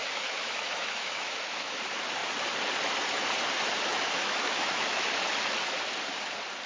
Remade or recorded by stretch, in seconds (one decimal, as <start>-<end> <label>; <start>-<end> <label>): 0.0-1.8 remade; 1.8-3.9 recorded; 3.9-5.1 remade; 5.1-6.7 recorded